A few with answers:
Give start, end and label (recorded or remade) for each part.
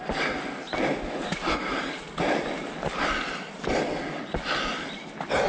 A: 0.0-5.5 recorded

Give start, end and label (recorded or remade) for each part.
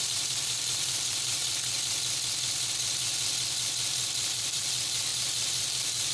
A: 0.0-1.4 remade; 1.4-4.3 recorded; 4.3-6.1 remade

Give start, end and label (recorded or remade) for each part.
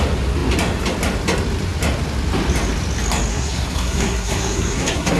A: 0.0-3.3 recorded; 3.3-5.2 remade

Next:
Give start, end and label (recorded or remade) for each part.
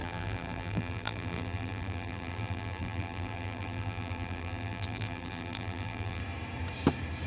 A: 0.0-6.2 remade; 6.2-7.3 recorded